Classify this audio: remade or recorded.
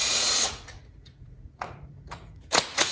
remade